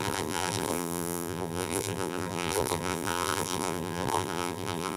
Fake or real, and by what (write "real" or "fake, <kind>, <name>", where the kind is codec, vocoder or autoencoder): fake, vocoder, BigVGAN v2